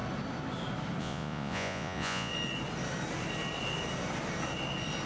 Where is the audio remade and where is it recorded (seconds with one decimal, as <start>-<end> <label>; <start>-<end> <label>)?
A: 0.0-1.0 recorded; 1.0-2.3 remade; 2.3-5.1 recorded